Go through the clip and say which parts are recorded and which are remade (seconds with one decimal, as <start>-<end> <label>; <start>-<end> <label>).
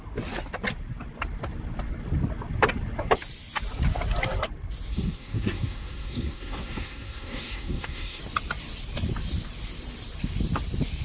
0.0-4.9 recorded; 4.9-8.2 remade; 8.2-11.0 recorded